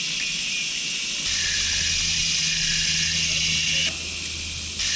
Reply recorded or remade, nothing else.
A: recorded